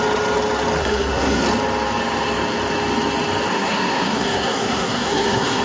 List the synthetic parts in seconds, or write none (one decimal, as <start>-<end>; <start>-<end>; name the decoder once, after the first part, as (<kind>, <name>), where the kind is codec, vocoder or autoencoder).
0.8-1.4 (codec, SNAC); 3.5-5.6